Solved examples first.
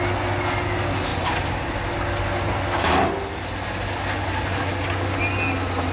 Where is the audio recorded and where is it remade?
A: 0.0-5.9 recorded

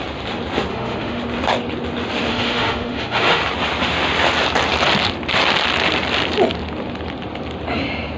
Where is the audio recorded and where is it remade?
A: 0.0-0.7 recorded; 0.7-1.2 remade; 1.2-2.3 recorded; 2.3-3.4 remade; 3.4-8.2 recorded

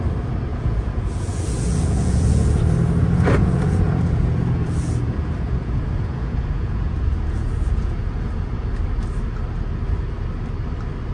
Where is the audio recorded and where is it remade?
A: 0.0-0.5 recorded; 0.5-2.6 remade; 2.6-3.4 recorded; 3.4-8.7 remade; 8.7-11.1 recorded

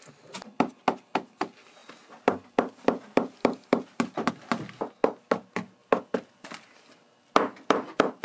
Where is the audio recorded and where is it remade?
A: 0.0-8.2 recorded

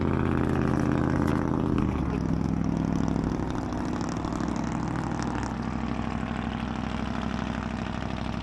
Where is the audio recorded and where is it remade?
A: 0.0-8.4 recorded

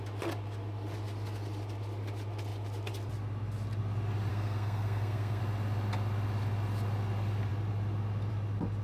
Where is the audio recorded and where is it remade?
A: 0.0-4.3 recorded; 4.3-5.4 remade; 5.4-8.8 recorded

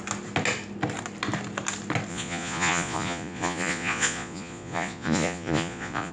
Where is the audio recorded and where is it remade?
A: 0.0-2.1 recorded; 2.1-6.1 remade

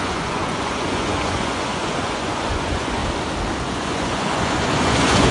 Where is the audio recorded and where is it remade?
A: 0.0-3.0 remade; 3.0-3.6 recorded; 3.6-5.3 remade